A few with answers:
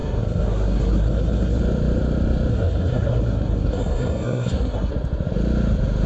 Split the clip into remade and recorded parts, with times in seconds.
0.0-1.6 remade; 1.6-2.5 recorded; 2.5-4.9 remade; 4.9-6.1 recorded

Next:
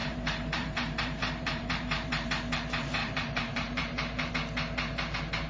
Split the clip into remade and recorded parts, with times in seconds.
0.0-2.3 remade; 2.3-3.0 recorded; 3.0-4.3 remade; 4.3-5.5 recorded

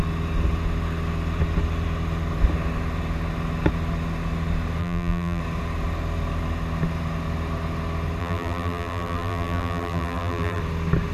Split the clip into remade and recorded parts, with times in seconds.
0.0-4.8 recorded; 4.8-5.4 remade; 5.4-8.2 recorded; 8.2-10.6 remade; 10.6-11.1 recorded

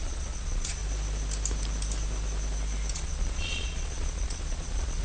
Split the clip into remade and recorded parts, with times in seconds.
0.0-0.8 remade; 0.8-2.9 recorded; 2.9-5.0 remade

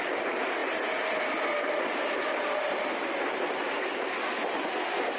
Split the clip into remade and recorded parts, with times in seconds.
0.0-5.2 recorded

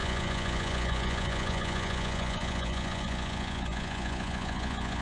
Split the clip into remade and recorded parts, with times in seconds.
0.0-5.0 remade

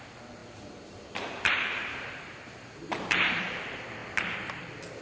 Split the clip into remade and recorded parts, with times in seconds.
0.0-0.4 recorded; 0.4-3.4 remade; 3.4-5.0 recorded

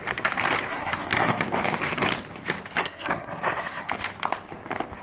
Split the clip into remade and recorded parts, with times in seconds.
0.0-0.7 recorded; 0.7-1.4 remade; 1.4-2.8 recorded; 2.8-3.9 remade; 3.9-5.0 recorded